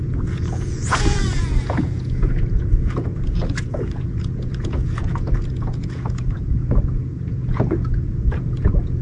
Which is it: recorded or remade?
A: remade